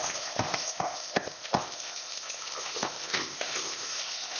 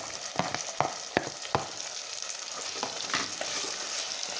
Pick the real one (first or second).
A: second